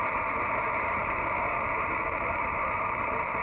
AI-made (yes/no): no